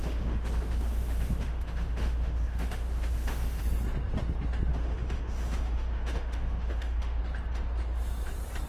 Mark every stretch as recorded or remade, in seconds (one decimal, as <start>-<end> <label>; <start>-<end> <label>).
0.0-3.6 remade; 3.6-4.7 recorded; 4.7-7.2 remade; 7.2-8.7 recorded